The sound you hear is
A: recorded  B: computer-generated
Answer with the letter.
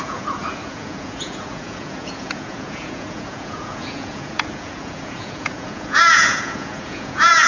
B